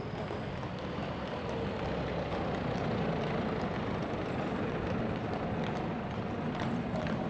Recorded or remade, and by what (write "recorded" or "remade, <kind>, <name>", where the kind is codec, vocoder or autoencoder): recorded